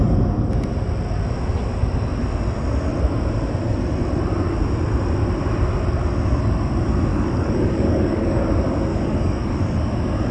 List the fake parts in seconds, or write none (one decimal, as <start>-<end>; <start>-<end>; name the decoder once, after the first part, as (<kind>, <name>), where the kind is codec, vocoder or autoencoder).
7.1-8.4 (codec, DAC); 8.9-9.6